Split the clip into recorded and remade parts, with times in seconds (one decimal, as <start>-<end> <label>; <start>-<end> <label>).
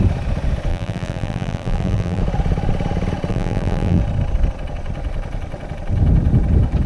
0.0-0.7 recorded; 0.7-2.2 remade; 2.2-3.3 recorded; 3.3-4.0 remade; 4.0-6.9 recorded